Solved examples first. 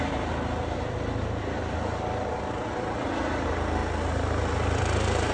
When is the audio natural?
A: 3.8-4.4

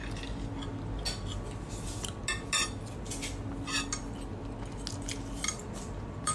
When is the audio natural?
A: 0.0-1.6; 2.2-5.5

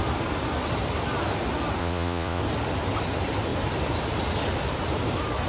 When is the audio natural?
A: 0.0-1.8; 2.4-5.5

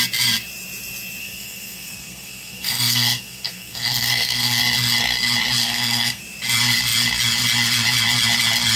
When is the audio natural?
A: 0.0-1.2; 4.6-5.6; 6.2-8.8

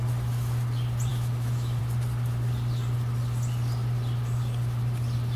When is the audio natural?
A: 0.0-1.1; 1.8-5.4